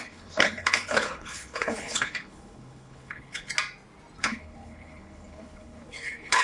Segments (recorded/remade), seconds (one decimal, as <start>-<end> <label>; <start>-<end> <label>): 0.0-3.5 remade; 3.5-4.2 recorded; 4.2-6.4 remade